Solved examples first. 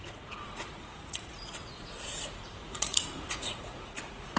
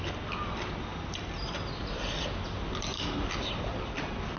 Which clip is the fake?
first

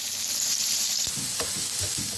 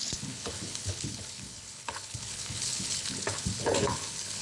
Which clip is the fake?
second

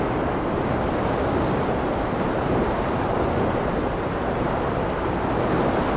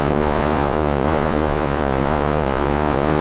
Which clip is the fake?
second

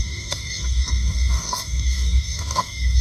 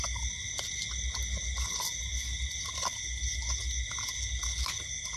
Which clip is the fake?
first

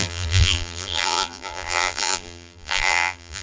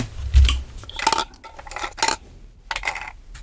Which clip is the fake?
first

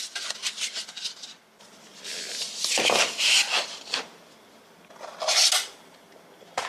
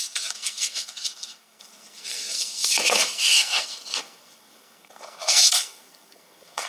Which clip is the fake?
second